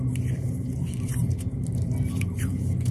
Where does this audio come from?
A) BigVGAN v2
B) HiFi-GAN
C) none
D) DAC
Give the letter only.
A